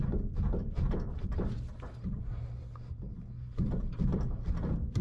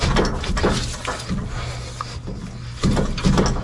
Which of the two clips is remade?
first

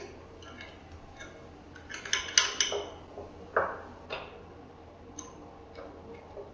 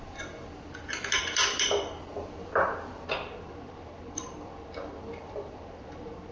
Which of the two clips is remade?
second